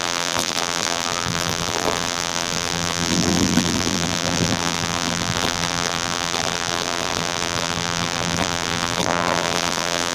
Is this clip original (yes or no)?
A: no